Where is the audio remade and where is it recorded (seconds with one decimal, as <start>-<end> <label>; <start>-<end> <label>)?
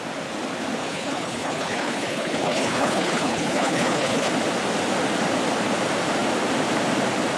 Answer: 0.0-0.8 recorded; 0.8-4.3 remade; 4.3-7.4 recorded